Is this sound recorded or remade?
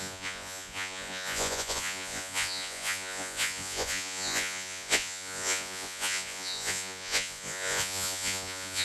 remade